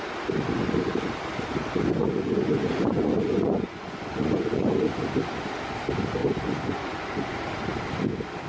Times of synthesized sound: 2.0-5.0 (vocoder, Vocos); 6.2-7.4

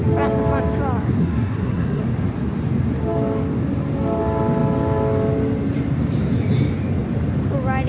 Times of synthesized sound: 1.2-2.0 (codec, SNAC)

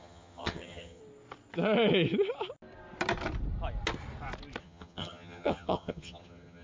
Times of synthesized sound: 0.0-1.0 (vocoder, HiFi-GAN); 4.6-6.6

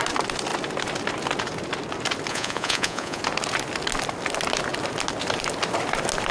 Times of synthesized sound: 2.3-3.2 (vocoder, Vocos)